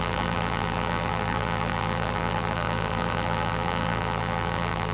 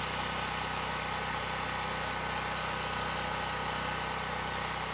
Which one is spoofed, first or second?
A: first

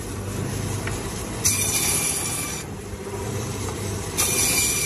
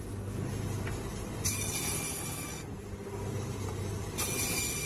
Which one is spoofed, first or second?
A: first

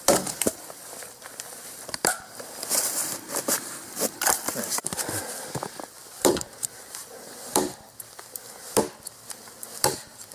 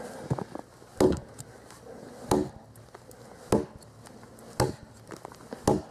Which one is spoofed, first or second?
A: first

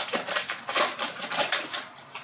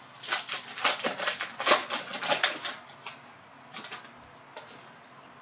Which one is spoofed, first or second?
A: first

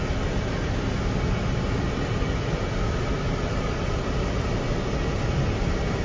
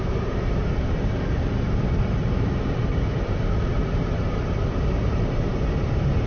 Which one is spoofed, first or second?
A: second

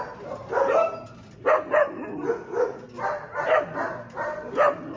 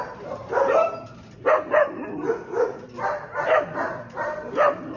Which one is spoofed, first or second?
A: second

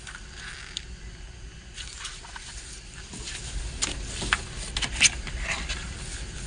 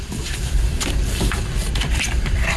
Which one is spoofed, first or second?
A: second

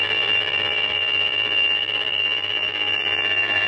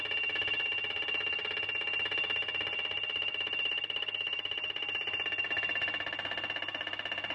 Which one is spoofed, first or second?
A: first